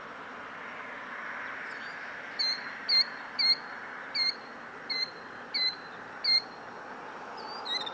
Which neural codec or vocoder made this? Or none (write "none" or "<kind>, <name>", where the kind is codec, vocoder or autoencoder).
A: none